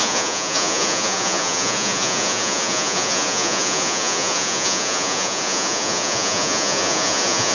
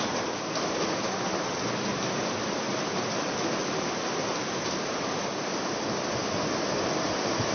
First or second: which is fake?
first